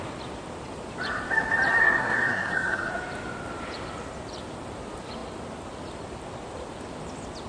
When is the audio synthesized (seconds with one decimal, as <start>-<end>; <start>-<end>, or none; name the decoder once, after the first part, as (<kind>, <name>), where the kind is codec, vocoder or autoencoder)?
1.8-2.9 (codec, SNAC)